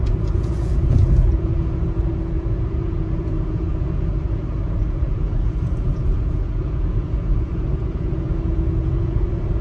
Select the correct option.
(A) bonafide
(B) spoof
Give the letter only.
B